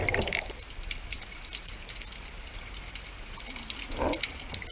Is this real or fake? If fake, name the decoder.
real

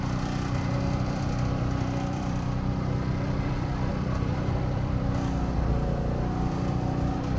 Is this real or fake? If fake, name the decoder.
fake, vocoder, BigVGAN v2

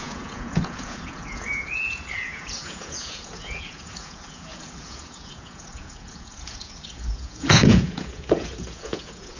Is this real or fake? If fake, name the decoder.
fake, vocoder, Vocos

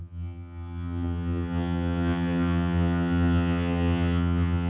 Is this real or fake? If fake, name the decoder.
fake, vocoder, HiFi-GAN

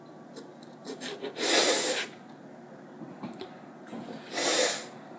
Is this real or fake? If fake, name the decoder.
real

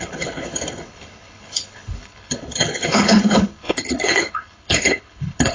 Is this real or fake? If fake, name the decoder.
fake, codec, HILCodec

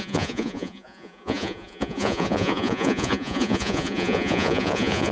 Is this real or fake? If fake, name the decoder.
fake, vocoder, Vocos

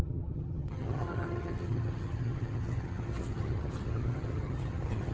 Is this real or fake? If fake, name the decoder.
fake, vocoder, HiFi-GAN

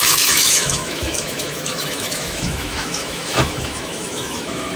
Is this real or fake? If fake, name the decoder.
fake, autoencoder, DAC-VAE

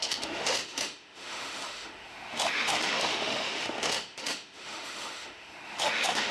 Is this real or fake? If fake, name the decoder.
fake, autoencoder, DAC-VAE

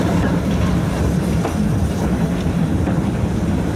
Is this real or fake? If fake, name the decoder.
real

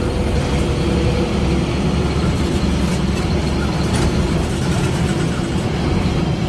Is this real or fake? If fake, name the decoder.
real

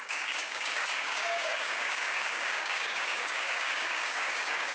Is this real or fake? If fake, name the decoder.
fake, codec, DAC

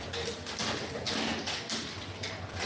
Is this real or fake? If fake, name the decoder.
real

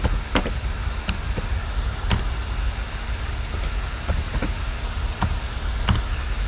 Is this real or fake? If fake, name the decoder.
real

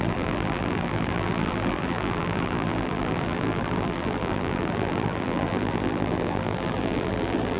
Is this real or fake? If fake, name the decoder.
fake, vocoder, BigVGAN v2